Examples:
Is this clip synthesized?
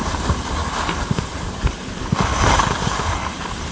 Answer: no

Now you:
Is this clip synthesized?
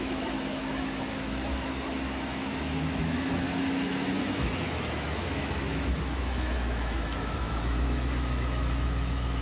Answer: yes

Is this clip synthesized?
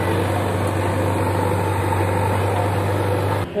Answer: no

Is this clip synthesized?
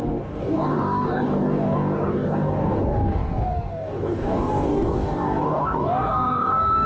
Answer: yes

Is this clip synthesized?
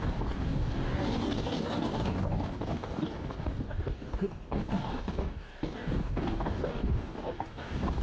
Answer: yes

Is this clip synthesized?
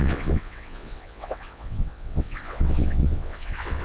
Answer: yes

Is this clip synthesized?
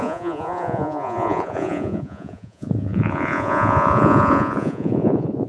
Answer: yes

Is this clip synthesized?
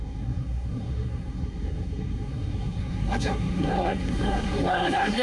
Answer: yes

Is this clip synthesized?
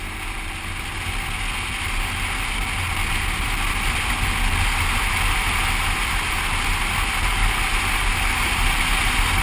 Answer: no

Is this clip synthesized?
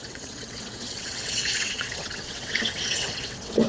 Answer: yes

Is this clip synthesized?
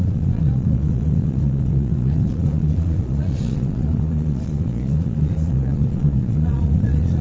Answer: yes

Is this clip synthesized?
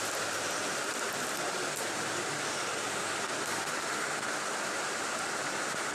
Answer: no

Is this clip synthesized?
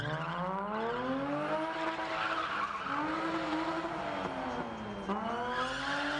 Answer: no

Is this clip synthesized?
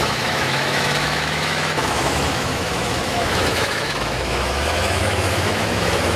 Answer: yes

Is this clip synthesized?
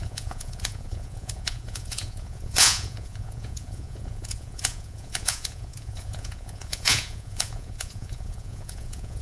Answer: yes